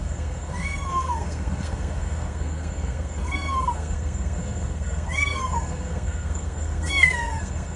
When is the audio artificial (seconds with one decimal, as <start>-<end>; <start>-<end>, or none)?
0.0-7.8